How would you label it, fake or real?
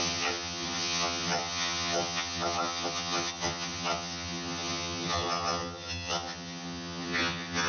fake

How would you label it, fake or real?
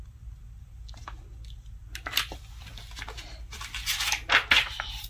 real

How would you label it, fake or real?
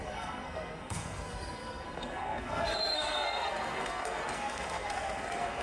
fake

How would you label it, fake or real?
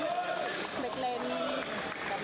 real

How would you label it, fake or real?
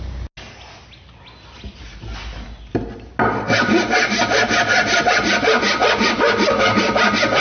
real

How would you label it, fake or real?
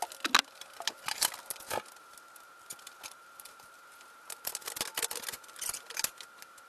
real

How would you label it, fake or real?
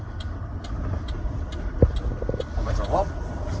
real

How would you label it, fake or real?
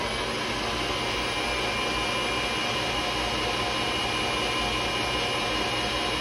real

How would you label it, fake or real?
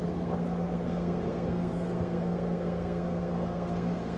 fake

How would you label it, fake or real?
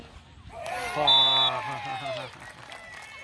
real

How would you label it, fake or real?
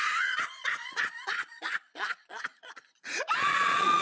fake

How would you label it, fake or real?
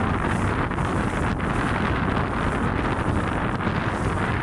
real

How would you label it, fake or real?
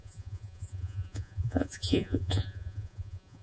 fake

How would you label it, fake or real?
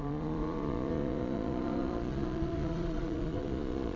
fake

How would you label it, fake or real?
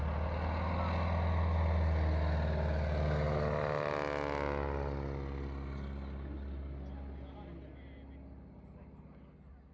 real